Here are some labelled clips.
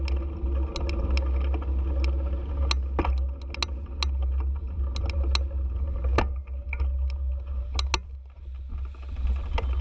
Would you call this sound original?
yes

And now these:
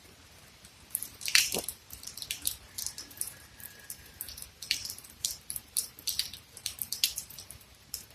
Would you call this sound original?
no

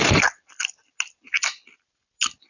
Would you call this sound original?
yes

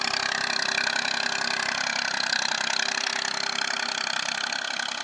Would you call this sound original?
yes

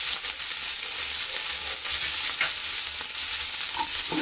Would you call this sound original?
yes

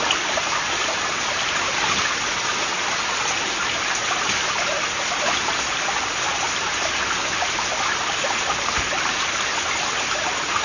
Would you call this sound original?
yes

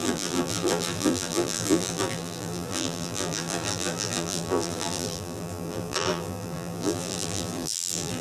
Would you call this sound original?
no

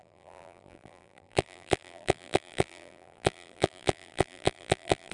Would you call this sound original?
no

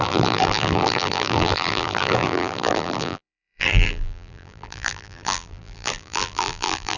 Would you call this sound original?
no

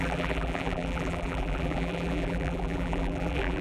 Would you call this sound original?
no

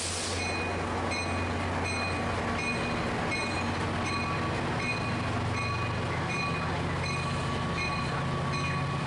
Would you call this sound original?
yes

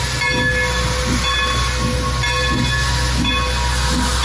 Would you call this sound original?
yes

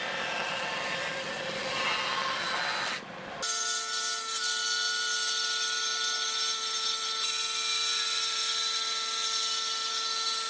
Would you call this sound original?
yes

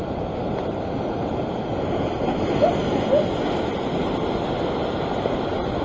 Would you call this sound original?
yes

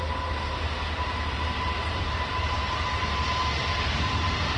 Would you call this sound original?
no